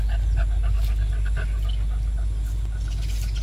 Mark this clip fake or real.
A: real